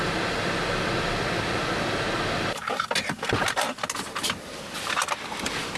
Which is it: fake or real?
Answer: real